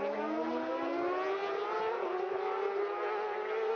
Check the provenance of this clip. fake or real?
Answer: real